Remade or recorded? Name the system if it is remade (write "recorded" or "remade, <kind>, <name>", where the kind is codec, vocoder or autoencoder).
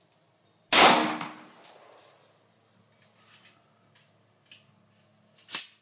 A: recorded